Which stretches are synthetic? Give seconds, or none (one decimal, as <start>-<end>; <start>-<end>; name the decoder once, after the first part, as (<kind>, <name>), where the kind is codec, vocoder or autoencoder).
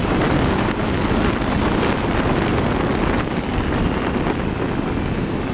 none